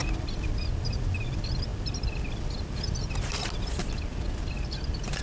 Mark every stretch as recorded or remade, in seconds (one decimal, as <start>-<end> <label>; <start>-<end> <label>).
0.0-5.2 recorded